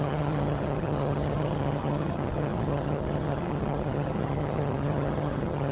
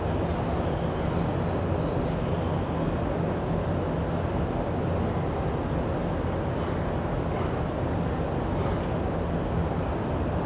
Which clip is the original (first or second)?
second